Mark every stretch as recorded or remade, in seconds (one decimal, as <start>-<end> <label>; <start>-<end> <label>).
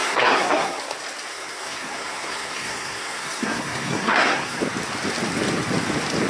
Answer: 0.0-0.8 remade; 0.8-1.3 recorded; 1.3-4.6 remade; 4.6-6.3 recorded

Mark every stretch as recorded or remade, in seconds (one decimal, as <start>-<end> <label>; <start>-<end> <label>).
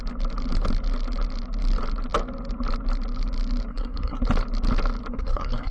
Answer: 0.0-3.7 recorded; 3.7-4.2 remade; 4.2-5.1 recorded; 5.1-5.7 remade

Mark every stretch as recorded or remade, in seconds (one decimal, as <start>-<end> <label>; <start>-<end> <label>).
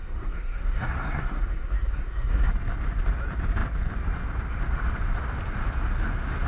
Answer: 0.0-2.5 remade; 2.5-6.5 recorded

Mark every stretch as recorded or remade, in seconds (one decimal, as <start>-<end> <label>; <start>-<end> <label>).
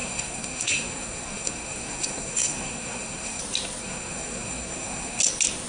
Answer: 0.0-3.4 remade; 3.4-3.8 recorded; 3.8-5.2 remade; 5.2-5.7 recorded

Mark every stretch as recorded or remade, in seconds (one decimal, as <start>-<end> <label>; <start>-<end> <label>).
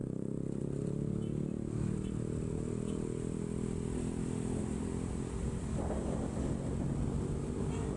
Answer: 0.0-8.0 recorded